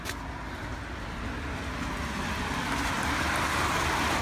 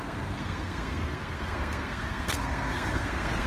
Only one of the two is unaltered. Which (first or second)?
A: first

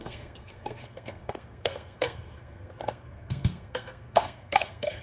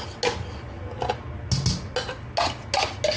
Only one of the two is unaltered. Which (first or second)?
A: second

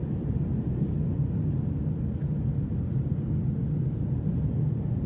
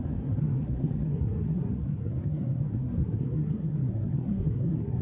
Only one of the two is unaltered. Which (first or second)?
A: first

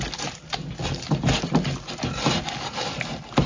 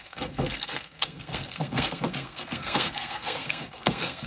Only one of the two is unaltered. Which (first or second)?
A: first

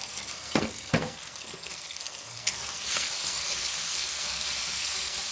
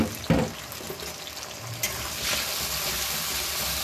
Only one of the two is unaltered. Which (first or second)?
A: second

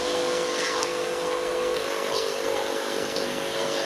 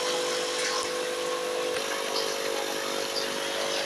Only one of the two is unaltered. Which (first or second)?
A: second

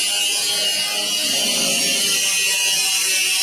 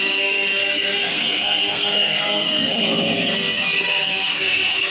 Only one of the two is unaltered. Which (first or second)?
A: first